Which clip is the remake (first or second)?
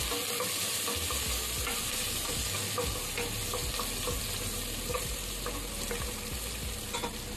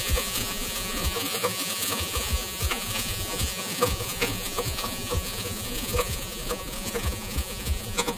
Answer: second